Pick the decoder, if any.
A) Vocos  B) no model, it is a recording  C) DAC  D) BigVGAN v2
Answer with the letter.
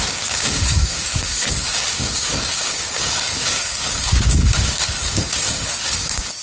C